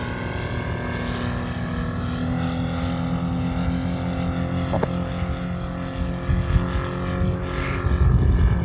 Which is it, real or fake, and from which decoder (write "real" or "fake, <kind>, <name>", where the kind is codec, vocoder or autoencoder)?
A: real